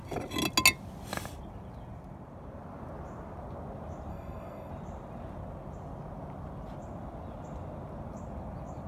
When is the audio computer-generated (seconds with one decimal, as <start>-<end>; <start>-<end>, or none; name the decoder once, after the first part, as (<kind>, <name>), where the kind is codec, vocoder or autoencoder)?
4.1-4.7 (codec, SNAC)